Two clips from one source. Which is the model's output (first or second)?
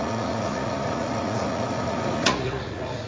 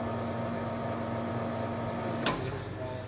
first